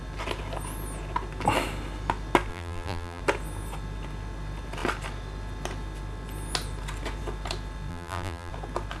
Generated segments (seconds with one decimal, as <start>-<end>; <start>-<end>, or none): 2.5-3.2; 7.9-8.5